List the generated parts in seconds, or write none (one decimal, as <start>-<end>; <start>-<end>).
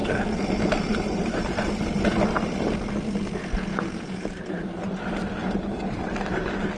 0.0-1.7; 3.7-4.7; 5.4-6.0